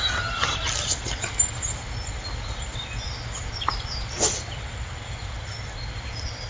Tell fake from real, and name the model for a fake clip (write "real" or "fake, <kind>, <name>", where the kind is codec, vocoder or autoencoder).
real